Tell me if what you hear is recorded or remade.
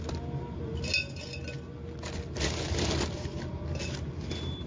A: recorded